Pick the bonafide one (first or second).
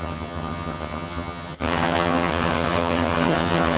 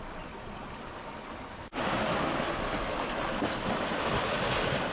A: second